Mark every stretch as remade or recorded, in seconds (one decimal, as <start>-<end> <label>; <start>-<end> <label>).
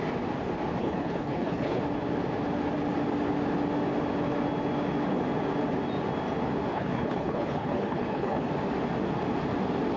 0.0-0.8 recorded; 0.8-1.8 remade; 1.8-6.7 recorded; 6.7-8.5 remade; 8.5-10.0 recorded